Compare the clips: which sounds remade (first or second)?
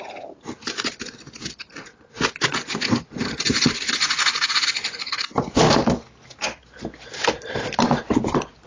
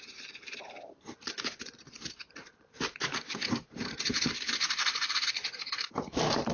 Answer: second